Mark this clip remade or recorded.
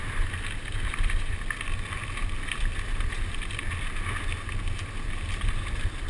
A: recorded